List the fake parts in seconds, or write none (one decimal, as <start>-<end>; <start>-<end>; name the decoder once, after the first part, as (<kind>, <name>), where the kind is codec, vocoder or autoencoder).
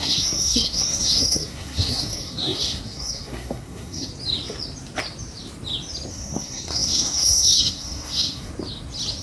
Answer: 0.0-4.1 (codec, SNAC); 6.1-8.5